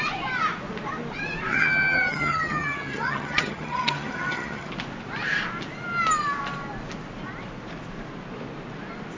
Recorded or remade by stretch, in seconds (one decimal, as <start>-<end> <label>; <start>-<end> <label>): 0.0-1.5 recorded; 1.5-4.7 remade; 4.7-9.2 recorded